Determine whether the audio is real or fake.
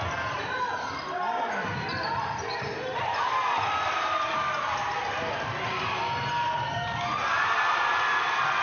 real